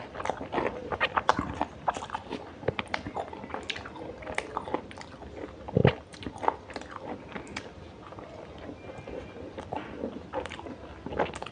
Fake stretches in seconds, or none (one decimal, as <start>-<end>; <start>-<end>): 0.8-1.5; 5.8-6.3